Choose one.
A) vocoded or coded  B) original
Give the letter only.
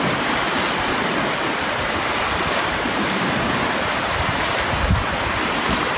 A